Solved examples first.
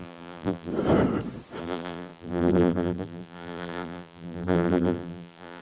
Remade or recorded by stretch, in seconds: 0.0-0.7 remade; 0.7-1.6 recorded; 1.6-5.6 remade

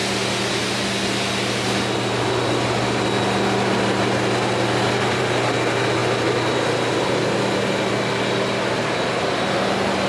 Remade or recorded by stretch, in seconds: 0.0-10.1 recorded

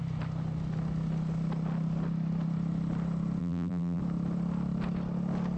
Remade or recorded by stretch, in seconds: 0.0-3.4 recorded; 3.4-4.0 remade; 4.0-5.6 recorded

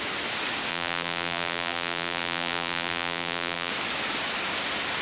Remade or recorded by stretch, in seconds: 0.0-0.7 recorded; 0.7-3.7 remade; 3.7-5.0 recorded

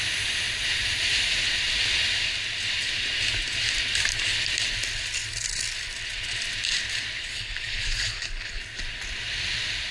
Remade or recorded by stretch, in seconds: 0.0-7.3 recorded; 7.3-8.6 remade; 8.6-9.9 recorded